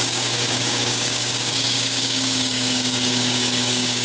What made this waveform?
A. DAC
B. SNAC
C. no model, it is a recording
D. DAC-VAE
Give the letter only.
A